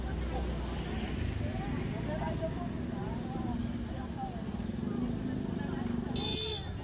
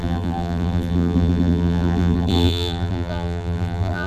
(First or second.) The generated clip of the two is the second